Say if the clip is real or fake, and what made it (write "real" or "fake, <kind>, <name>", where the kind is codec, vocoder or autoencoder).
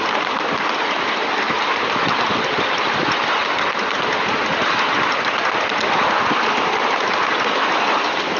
real